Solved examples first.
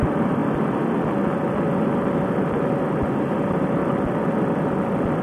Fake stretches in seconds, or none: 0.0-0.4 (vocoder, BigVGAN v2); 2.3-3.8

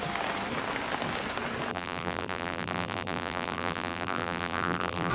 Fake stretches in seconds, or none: 1.7-5.1 (vocoder, BigVGAN v2)

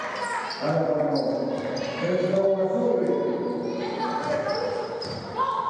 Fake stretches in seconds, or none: 4.5-5.7 (vocoder, BigVGAN v2)

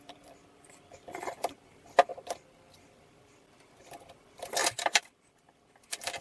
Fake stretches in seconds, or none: 0.0-2.1 (vocoder, BigVGAN v2); 2.7-6.2

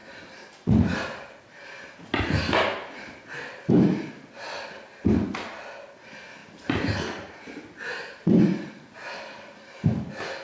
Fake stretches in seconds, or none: 6.4-7.0 (vocoder, BigVGAN v2)

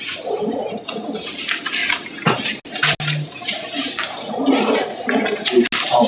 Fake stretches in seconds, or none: none

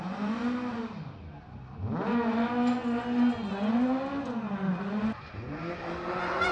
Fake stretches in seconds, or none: none

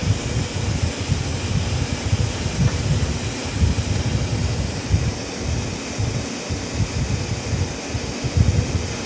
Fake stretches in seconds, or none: 0.0-2.8 (vocoder, BigVGAN v2)